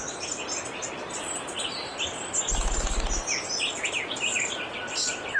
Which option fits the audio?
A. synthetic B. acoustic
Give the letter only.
B